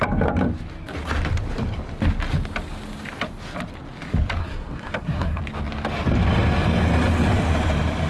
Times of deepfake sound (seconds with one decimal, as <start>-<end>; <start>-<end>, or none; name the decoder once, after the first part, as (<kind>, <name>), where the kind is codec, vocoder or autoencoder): 4.4-5.4 (codec, SNAC)